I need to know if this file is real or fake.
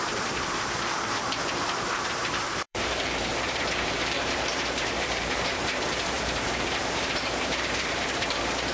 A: fake